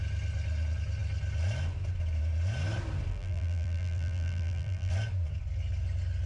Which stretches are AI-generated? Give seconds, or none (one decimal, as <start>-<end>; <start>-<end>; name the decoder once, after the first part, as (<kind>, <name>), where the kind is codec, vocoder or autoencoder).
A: 3.1-4.9 (vocoder, BigVGAN v2)